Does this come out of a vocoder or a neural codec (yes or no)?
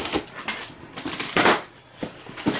yes